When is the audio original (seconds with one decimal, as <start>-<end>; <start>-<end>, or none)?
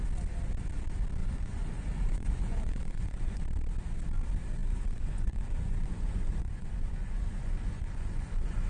0.0-1.2; 3.4-4.6